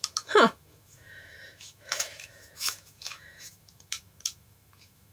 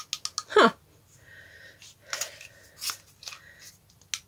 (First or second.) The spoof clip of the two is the first